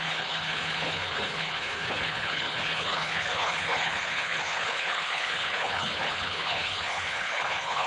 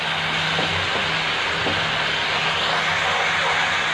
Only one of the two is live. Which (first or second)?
second